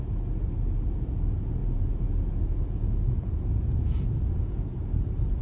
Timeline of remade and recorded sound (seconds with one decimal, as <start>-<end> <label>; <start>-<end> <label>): 0.0-1.6 recorded; 1.6-4.8 remade; 4.8-5.4 recorded